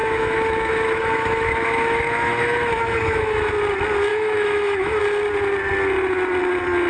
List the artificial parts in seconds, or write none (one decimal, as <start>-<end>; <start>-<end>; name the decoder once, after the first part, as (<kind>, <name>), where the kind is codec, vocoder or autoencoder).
0.0-3.5 (autoencoder, DAC-VAE); 4.1-5.0